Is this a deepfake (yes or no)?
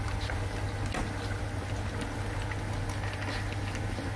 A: no